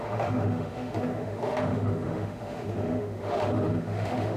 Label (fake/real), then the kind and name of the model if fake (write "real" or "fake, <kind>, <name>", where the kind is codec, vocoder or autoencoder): fake, autoencoder, DAC-VAE